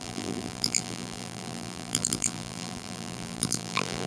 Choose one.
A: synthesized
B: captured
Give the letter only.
A